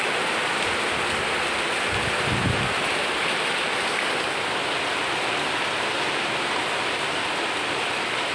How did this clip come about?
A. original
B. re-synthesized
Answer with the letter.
A